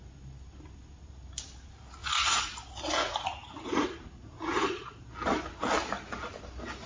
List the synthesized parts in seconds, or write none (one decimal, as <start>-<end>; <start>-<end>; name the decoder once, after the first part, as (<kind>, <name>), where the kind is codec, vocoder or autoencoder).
2.0-2.5 (vocoder, Vocos); 3.0-5.0